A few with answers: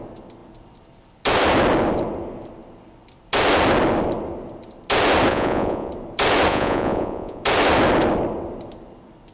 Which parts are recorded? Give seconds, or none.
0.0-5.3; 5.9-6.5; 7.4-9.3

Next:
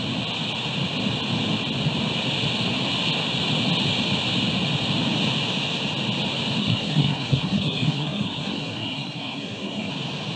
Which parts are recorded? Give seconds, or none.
0.0-6.6; 9.9-10.4

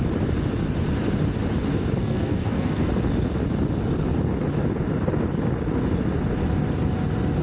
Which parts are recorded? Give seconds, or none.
0.0-2.0; 2.9-7.4

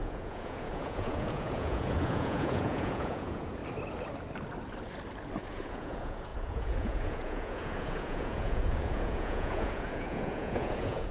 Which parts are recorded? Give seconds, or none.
3.6-5.4